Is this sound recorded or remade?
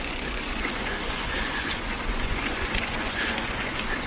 remade